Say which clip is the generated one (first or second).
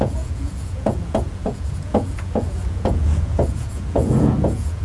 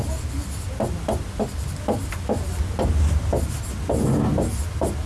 first